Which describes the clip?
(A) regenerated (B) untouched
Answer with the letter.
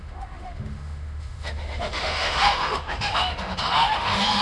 A